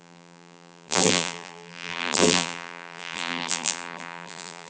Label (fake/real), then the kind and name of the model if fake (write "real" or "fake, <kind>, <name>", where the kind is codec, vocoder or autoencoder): fake, vocoder, BigVGAN v2